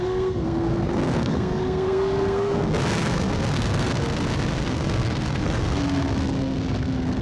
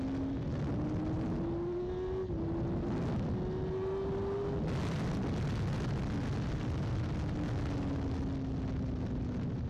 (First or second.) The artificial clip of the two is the first